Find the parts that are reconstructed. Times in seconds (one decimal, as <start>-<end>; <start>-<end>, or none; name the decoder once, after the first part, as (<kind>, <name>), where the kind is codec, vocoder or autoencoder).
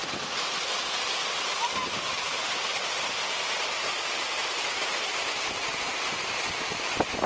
0.0-0.5 (vocoder, BigVGAN v2); 2.3-6.2